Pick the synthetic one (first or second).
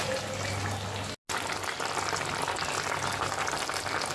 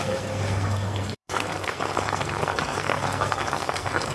second